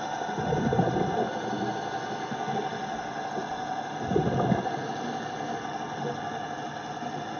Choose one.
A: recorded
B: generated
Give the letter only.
A